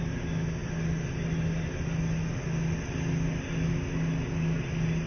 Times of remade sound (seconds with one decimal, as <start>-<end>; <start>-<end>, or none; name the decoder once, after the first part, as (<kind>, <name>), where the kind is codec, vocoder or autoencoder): none